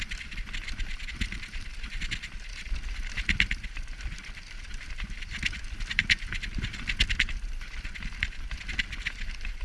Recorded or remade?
recorded